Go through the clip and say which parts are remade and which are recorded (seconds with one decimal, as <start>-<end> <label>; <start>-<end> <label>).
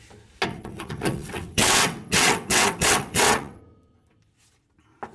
0.0-0.5 recorded; 0.5-3.6 remade; 3.6-5.1 recorded